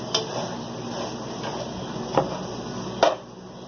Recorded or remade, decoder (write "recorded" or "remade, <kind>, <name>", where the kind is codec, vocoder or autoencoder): recorded